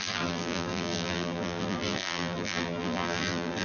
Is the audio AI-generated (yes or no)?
yes